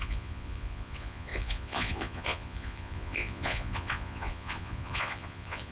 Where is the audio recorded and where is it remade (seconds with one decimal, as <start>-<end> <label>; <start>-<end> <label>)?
0.0-5.7 remade